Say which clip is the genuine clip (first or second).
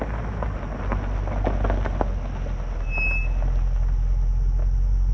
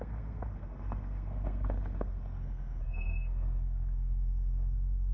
first